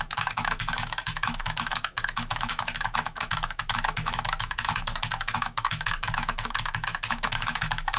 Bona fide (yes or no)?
no